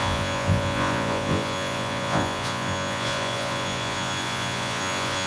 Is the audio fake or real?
fake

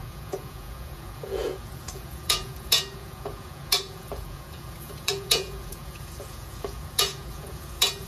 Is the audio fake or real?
fake